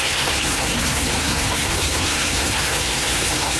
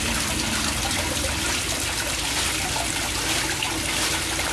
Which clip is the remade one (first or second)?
first